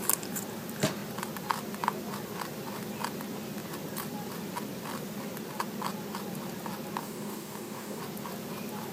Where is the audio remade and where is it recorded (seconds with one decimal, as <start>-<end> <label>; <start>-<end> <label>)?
0.0-7.0 recorded; 7.0-8.0 remade; 8.0-8.9 recorded